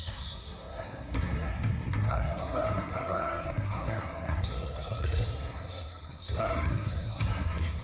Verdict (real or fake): fake